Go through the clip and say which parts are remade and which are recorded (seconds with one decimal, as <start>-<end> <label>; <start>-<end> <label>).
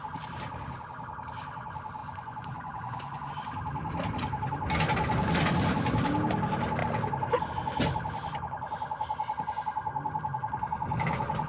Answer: 0.0-2.0 recorded; 2.0-3.3 remade; 3.3-11.5 recorded